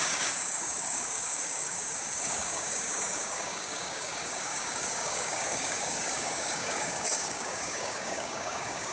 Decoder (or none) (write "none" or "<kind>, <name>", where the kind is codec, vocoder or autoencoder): codec, DAC